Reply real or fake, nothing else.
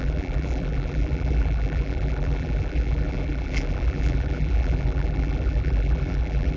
fake